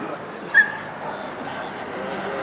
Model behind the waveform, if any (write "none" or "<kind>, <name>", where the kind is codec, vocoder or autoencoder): none